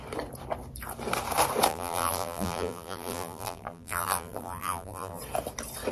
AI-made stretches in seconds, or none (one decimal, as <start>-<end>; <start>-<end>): 1.7-5.2